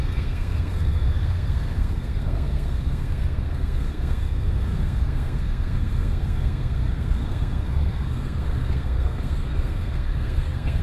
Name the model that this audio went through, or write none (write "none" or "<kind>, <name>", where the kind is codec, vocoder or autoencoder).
codec, SNAC